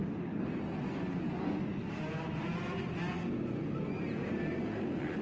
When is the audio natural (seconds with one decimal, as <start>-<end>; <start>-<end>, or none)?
0.0-5.2